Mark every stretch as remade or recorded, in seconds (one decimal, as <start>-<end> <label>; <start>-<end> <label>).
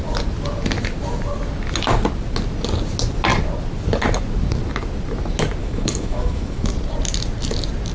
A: 0.0-5.6 recorded; 5.6-6.7 remade; 6.7-7.9 recorded